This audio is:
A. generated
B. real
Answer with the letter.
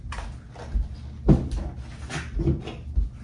B